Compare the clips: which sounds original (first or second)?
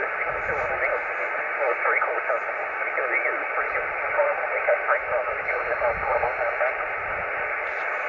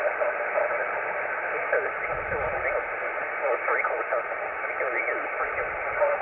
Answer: first